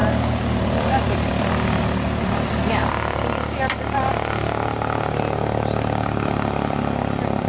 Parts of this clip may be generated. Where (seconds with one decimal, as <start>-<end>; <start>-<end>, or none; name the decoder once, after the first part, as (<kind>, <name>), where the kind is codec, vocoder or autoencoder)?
0.0-1.5 (vocoder, BigVGAN v2)